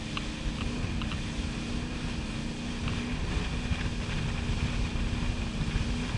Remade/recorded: recorded